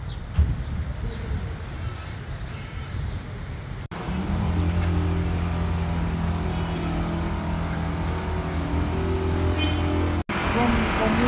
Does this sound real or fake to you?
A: real